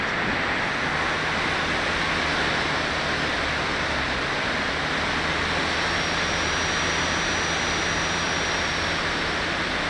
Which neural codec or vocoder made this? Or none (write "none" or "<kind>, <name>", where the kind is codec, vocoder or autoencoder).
none